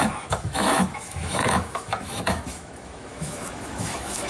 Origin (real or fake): fake